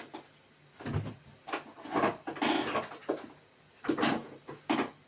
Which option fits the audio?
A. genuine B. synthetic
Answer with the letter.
A